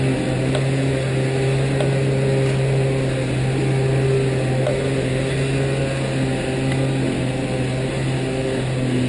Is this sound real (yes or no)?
yes